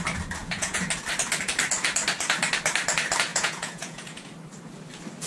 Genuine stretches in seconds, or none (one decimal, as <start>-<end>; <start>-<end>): 0.0-0.4; 0.9-3.3; 4.3-5.3